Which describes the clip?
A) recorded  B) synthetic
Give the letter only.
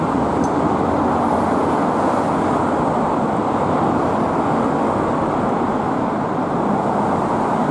A